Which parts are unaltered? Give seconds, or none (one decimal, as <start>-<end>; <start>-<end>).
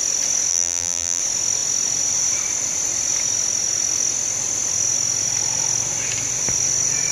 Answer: 0.0-0.5; 1.2-7.1